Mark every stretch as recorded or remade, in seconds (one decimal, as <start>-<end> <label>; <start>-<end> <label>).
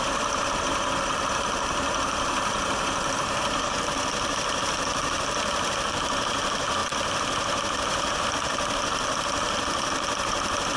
0.0-10.8 remade